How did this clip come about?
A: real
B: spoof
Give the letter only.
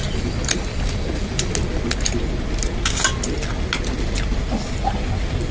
A